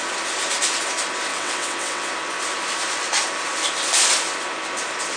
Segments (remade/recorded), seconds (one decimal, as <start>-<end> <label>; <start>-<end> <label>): 0.0-1.3 recorded; 1.3-2.1 remade; 2.1-5.2 recorded